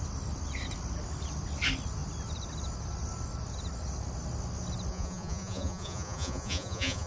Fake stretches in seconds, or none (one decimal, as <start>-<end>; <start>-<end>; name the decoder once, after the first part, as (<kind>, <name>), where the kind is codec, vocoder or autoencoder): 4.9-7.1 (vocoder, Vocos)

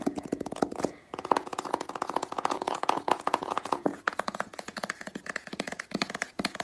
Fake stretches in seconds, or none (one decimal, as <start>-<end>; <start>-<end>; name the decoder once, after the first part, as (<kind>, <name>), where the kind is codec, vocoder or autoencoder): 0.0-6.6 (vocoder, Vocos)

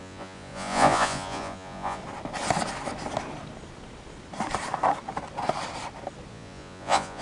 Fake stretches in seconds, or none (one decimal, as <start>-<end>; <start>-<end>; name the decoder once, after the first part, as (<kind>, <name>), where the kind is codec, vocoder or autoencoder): 0.0-2.0 (vocoder, Vocos); 6.3-7.2

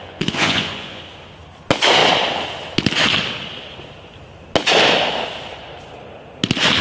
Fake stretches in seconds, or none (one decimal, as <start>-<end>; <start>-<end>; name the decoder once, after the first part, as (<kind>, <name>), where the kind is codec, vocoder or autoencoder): 0.0-1.0 (vocoder, Vocos)